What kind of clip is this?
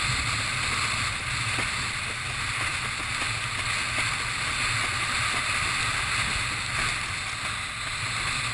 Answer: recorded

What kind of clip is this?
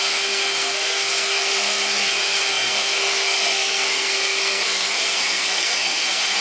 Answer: remade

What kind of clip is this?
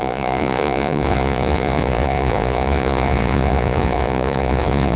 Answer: remade